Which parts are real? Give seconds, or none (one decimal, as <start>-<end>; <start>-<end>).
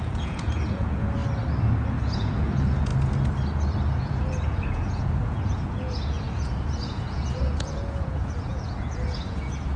1.2-2.0; 2.9-4.0